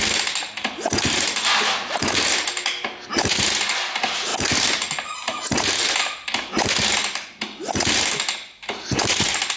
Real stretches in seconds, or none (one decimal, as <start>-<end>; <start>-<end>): 0.0-9.6